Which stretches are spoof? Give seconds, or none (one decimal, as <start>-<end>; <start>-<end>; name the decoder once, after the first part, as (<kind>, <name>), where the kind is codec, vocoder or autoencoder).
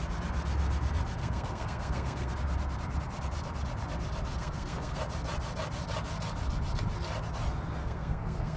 1.2-2.3 (codec, SNAC); 4.4-5.0; 7.8-8.6